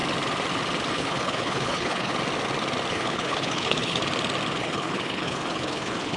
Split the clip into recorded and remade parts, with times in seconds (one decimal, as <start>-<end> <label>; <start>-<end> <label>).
0.0-0.9 recorded; 0.9-2.1 remade; 2.1-2.9 recorded; 2.9-4.0 remade; 4.0-4.6 recorded; 4.6-6.2 remade